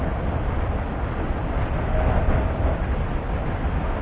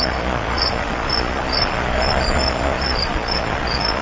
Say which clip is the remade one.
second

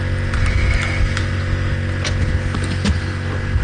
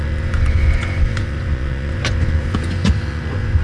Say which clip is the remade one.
second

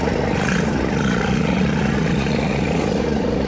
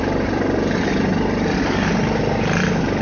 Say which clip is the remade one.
first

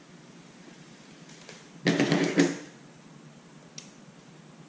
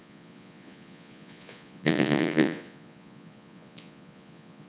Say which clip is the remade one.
second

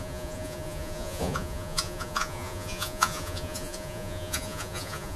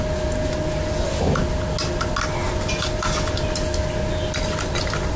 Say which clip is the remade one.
first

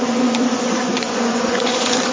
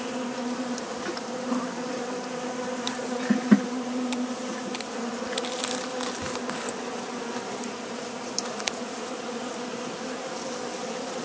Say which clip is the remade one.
first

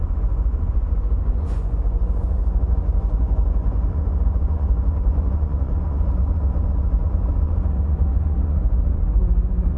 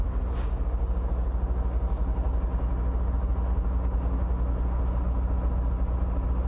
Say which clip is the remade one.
first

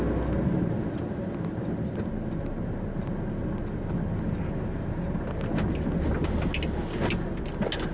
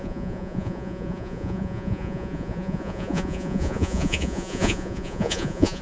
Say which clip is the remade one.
second